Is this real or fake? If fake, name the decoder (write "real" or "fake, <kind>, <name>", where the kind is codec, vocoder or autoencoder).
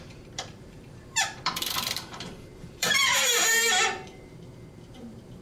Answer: fake, vocoder, BigVGAN v2